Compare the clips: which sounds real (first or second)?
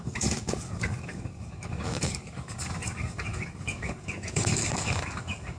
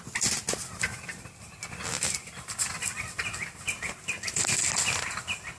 second